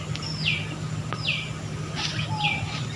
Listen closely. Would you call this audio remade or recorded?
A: recorded